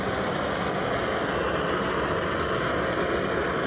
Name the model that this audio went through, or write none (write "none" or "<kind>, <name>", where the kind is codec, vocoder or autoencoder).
none